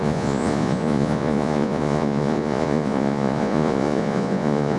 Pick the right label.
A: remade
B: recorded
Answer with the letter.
A